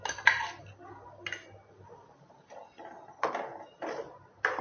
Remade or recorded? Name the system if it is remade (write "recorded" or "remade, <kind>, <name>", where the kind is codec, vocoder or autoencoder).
recorded